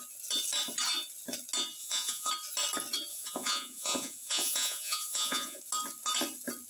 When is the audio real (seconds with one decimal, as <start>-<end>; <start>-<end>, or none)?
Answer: 0.0-1.8; 2.3-3.1; 5.6-6.7